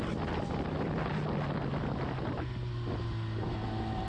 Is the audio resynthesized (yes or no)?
no